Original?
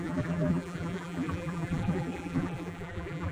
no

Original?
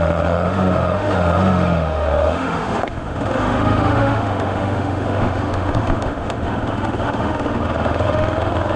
no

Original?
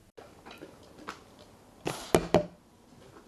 yes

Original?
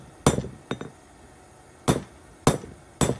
yes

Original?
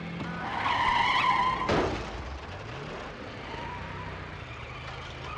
yes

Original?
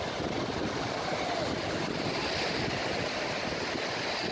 yes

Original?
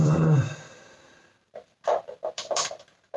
no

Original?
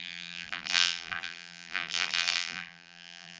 no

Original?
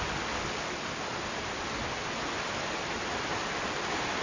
no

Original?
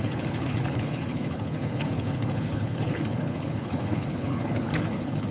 no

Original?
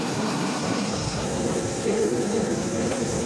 no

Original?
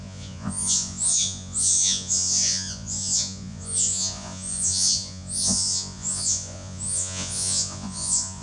no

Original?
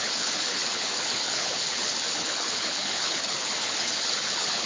no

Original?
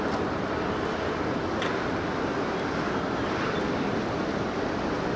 yes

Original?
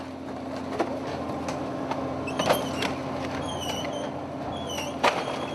yes